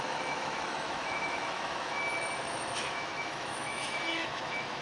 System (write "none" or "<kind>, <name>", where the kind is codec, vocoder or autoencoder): autoencoder, DAC-VAE